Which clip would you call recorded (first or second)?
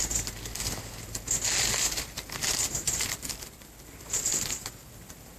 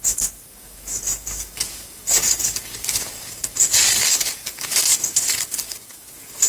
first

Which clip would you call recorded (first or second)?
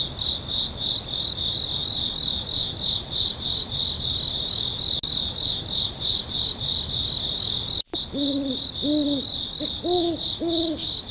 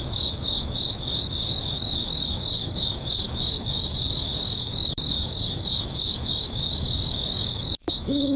first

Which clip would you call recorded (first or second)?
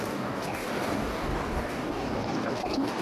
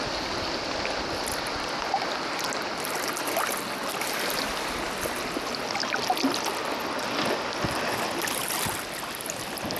second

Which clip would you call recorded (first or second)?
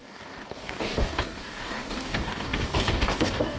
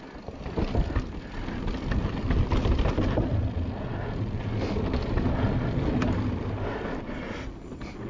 second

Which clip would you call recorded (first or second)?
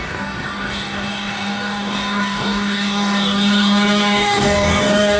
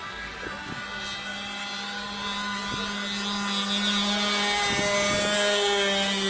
second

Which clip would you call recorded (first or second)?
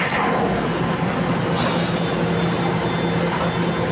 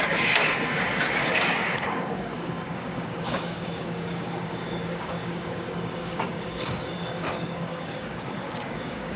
first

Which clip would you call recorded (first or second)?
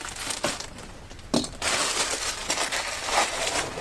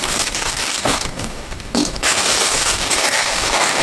first